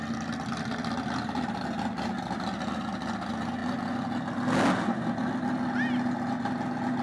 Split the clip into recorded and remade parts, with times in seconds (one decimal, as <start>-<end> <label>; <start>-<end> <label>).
0.0-7.0 recorded